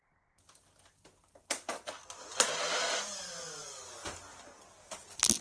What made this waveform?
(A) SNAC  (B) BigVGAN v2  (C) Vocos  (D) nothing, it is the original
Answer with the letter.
D